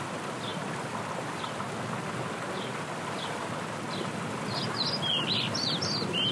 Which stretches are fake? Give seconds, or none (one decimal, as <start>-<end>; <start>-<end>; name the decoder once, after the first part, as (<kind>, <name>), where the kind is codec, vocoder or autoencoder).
none